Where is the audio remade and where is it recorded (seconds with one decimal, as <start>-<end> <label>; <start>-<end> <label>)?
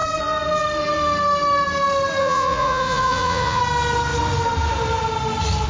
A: 0.0-2.2 recorded; 2.2-3.6 remade; 3.6-5.7 recorded